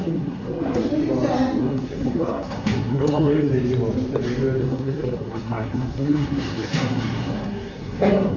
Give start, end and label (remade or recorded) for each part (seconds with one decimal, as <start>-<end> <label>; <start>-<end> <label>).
0.0-0.9 remade; 0.9-1.6 recorded; 1.6-3.5 remade; 3.5-4.6 recorded; 4.6-8.4 remade